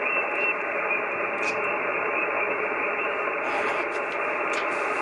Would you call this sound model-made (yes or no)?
yes